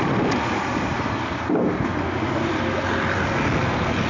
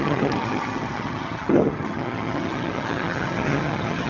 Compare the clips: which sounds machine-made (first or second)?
second